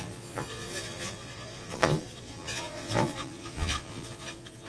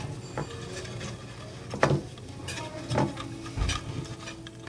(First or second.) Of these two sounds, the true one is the second